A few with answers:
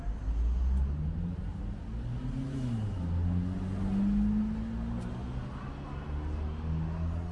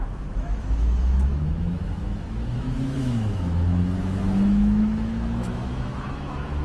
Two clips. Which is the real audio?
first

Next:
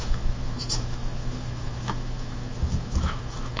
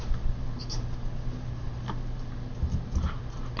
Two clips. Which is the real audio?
second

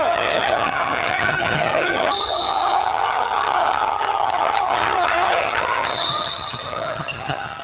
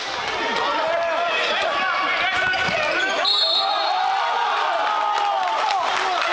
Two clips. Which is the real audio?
second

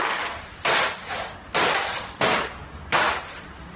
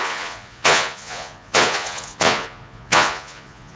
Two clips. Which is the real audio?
first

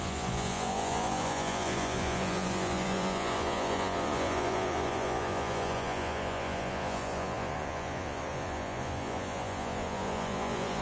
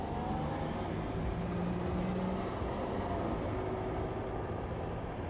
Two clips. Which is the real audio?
second